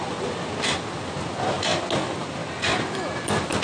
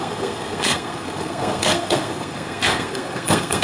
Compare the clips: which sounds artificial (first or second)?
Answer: second